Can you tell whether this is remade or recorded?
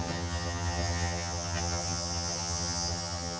remade